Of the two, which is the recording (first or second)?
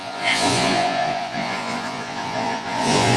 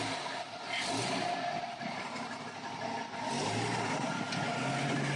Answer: second